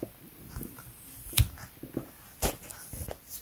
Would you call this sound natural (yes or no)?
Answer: yes